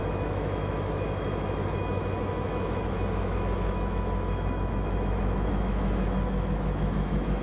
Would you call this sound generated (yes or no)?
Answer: yes